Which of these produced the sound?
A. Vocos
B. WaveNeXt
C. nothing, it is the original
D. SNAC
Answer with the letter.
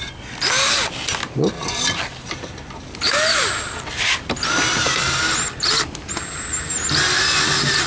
C